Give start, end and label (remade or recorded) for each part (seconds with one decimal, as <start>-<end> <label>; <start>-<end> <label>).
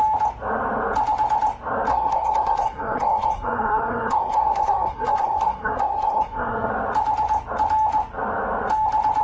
0.0-1.9 recorded; 1.9-6.7 remade; 6.7-9.2 recorded